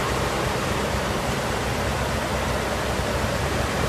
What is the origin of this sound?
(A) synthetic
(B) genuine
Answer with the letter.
A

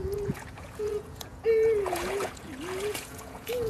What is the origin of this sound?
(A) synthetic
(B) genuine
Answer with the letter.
A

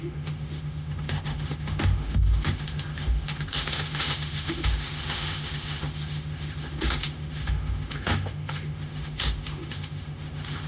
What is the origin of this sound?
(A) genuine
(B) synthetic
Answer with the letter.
B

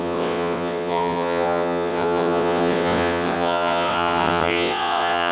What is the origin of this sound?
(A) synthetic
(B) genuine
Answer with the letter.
A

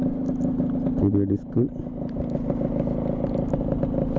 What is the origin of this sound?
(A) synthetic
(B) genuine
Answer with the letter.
B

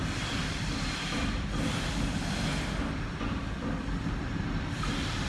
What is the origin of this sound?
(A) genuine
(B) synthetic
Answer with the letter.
A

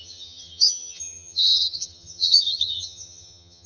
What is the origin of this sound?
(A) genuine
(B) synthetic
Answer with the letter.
B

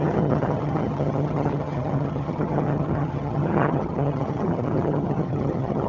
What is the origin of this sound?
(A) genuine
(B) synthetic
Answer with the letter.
B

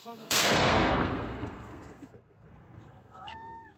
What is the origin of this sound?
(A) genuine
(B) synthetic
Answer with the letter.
B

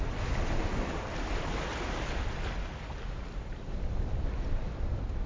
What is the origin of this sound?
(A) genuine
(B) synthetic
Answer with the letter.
A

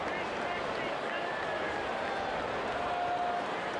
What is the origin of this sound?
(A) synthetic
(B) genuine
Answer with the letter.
B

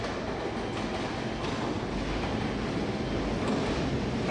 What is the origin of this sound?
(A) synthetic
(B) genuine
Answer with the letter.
B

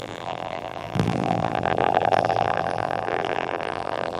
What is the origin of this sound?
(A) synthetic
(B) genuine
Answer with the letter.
A